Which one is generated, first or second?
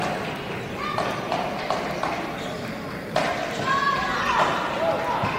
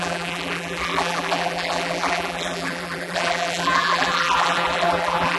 second